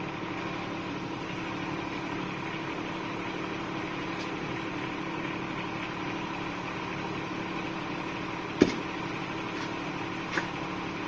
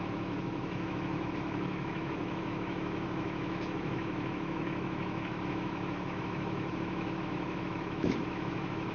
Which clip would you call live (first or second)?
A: first